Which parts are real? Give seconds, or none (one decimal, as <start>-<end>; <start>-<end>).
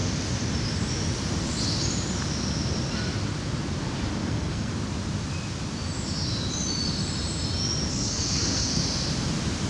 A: 0.0-4.2; 4.7-7.9; 8.8-9.7